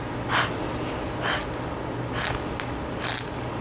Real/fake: real